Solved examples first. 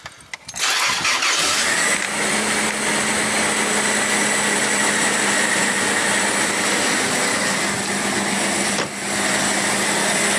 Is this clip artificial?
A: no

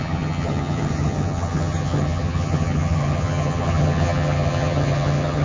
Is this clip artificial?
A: yes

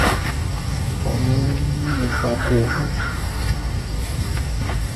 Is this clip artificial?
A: yes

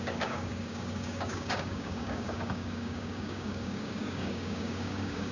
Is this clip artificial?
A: yes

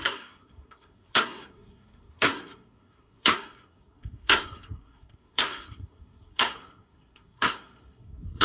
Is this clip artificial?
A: yes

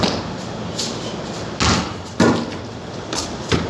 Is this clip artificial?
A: no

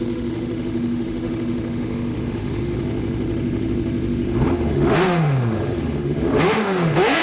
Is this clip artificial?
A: yes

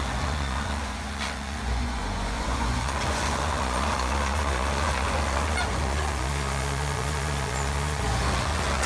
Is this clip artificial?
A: yes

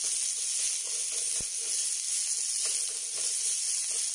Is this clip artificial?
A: no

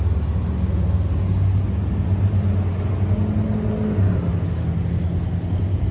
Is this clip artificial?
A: no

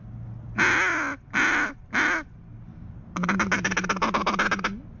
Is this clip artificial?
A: no